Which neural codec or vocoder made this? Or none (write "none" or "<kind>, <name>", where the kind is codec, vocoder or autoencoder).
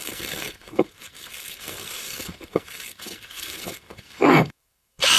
codec, SNAC